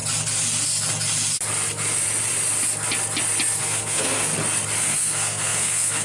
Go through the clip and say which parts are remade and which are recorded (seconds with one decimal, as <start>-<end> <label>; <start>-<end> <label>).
0.0-3.6 recorded; 3.6-4.3 remade; 4.3-4.8 recorded; 4.8-6.0 remade

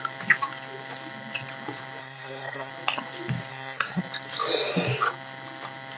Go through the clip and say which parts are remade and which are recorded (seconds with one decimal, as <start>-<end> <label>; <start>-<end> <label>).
0.0-2.0 recorded; 2.0-2.7 remade; 2.7-3.5 recorded; 3.5-4.0 remade; 4.0-6.0 recorded

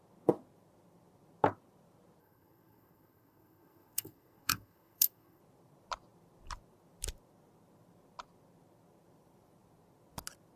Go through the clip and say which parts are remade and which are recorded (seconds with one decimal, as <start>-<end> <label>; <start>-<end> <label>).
0.0-2.2 recorded; 2.2-5.4 remade; 5.4-10.6 recorded

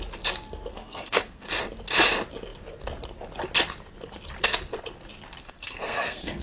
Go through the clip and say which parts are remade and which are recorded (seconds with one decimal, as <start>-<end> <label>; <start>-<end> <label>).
0.0-0.7 recorded; 0.7-1.5 remade; 1.5-5.4 recorded; 5.4-6.4 remade

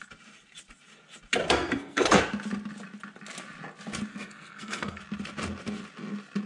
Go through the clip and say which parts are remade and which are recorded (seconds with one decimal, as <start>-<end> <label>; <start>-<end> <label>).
0.0-1.4 recorded; 1.4-2.2 remade; 2.2-4.1 recorded; 4.1-5.0 remade; 5.0-6.5 recorded